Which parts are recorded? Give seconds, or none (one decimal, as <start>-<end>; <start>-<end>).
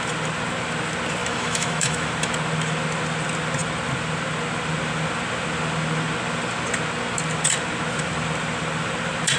0.0-1.2; 2.1-9.4